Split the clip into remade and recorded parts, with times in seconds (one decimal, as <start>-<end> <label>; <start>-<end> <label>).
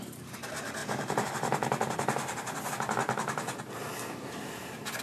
0.0-0.8 recorded; 0.8-2.7 remade; 2.7-5.0 recorded